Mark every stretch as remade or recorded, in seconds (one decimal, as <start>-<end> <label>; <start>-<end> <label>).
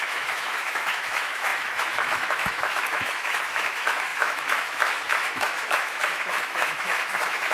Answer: 0.0-7.5 remade